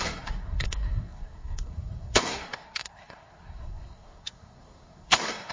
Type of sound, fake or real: fake